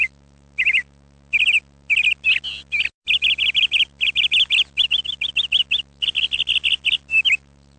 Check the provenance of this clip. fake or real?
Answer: real